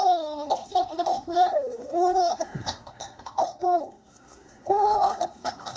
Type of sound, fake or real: fake